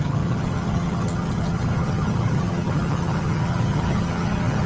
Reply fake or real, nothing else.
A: fake